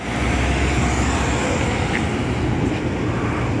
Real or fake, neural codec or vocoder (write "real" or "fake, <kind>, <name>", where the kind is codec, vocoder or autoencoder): real